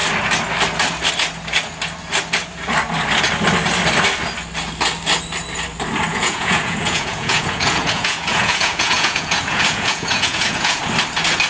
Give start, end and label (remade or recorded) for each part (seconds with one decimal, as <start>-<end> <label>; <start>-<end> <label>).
0.0-6.1 recorded; 6.1-10.8 remade; 10.8-11.5 recorded

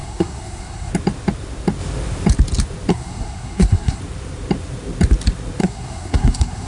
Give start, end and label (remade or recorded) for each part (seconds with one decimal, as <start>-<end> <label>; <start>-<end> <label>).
0.0-0.9 remade; 0.9-2.9 recorded; 2.9-4.0 remade; 4.0-5.6 recorded; 5.6-6.7 remade

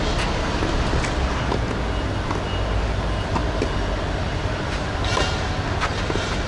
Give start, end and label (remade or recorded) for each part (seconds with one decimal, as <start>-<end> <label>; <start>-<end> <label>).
0.0-6.5 recorded

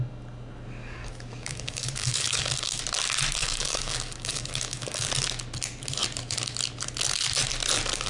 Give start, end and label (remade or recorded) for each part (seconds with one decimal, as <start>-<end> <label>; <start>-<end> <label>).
0.0-0.8 recorded; 0.8-2.8 remade; 2.8-3.4 recorded; 3.4-5.1 remade; 5.1-8.1 recorded

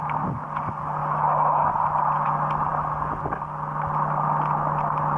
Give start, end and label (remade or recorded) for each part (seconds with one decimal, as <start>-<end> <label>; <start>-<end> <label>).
0.0-1.0 recorded; 1.0-1.7 remade; 1.7-5.2 recorded

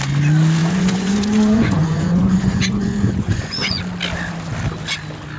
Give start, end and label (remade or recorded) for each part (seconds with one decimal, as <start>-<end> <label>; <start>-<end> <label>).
0.0-0.6 recorded; 0.6-3.8 remade; 3.8-5.4 recorded

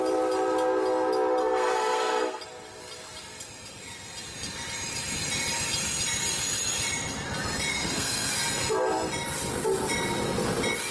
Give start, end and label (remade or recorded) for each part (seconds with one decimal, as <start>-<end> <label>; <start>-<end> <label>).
0.0-1.4 recorded; 1.4-2.4 remade; 2.4-7.7 recorded; 7.7-8.3 remade; 8.3-10.9 recorded